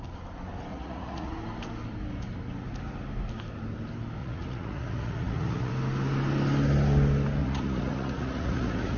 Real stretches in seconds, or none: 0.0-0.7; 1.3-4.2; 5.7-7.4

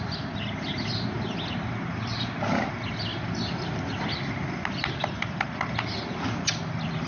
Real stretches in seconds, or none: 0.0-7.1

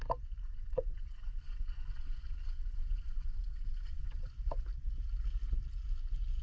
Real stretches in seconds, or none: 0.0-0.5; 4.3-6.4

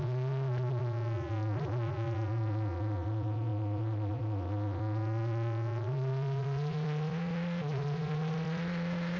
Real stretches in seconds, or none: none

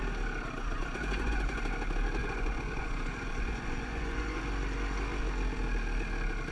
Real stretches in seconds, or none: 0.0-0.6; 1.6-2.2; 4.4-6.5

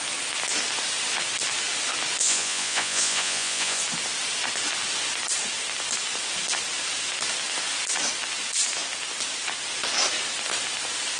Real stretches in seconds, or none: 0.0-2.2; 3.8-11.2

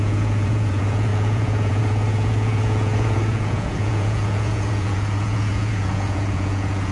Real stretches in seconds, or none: none

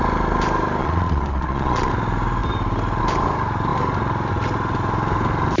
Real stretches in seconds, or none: 0.0-0.8; 1.9-5.6